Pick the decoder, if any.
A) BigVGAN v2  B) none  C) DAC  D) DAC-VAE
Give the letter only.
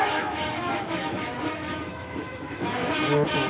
D